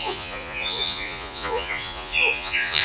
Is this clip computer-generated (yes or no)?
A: yes